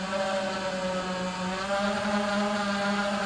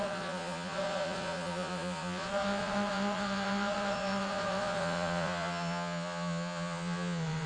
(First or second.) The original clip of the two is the first